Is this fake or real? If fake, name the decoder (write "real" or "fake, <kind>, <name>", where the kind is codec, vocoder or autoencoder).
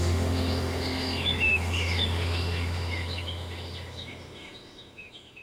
fake, autoencoder, DAC-VAE